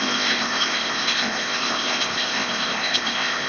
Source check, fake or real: fake